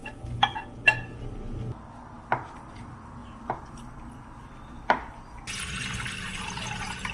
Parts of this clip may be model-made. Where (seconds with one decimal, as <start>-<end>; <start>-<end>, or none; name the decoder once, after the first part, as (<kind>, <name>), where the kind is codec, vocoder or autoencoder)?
none